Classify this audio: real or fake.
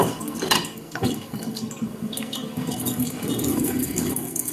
fake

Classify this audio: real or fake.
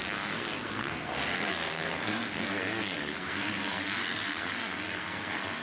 fake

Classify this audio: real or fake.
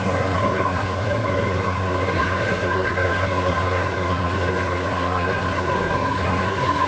fake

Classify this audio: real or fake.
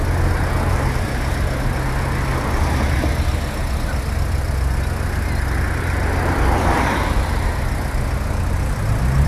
real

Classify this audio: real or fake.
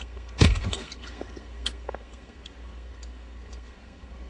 fake